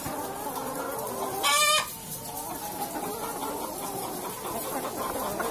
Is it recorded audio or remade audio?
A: recorded